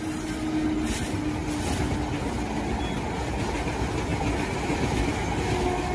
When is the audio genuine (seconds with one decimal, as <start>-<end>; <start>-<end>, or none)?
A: 0.0-5.9